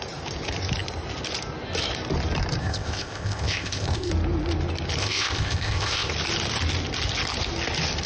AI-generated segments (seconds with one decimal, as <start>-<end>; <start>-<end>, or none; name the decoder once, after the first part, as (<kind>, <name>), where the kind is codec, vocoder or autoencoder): 2.6-4.1 (codec, ZipCodec); 5.0-6.1

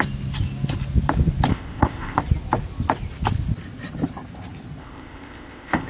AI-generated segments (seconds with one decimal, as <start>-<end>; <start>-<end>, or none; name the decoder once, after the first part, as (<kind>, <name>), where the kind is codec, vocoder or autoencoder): 1.5-2.2 (codec, ZipCodec); 4.8-5.9